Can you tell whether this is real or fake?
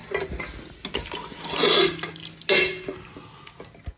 real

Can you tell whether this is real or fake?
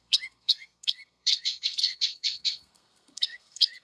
fake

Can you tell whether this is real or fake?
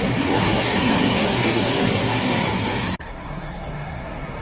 fake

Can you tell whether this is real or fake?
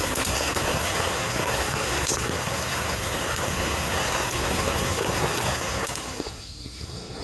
fake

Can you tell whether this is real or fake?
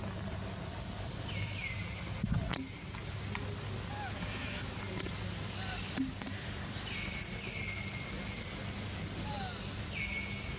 real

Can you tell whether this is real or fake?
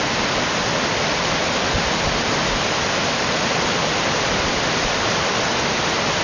real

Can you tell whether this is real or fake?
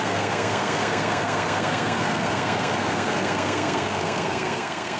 fake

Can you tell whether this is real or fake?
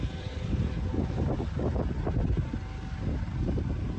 real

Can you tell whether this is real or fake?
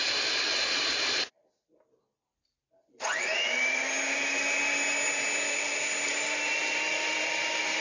real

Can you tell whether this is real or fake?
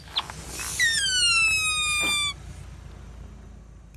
real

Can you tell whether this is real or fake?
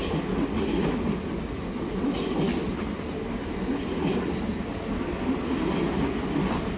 real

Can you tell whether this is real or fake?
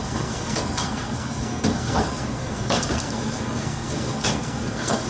fake